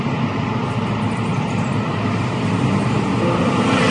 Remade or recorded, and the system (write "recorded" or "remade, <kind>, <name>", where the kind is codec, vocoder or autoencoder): recorded